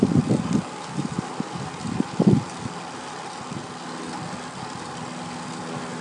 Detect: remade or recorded recorded